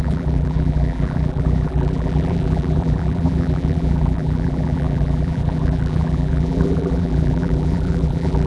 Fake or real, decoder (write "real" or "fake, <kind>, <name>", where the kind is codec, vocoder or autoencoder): fake, vocoder, BigVGAN v2